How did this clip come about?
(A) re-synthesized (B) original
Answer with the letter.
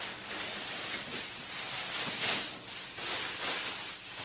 B